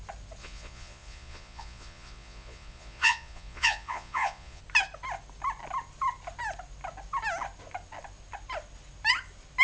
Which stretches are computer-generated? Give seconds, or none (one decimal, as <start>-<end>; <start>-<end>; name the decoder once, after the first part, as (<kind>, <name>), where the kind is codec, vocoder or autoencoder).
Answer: 0.4-4.6 (vocoder, Vocos)